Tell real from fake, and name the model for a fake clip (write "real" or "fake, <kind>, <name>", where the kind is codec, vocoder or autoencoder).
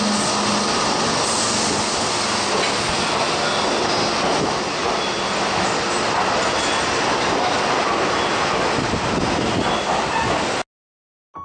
real